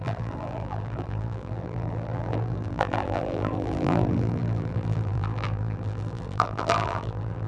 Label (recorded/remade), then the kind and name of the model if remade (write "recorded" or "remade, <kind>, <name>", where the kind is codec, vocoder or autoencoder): remade, vocoder, BigVGAN v2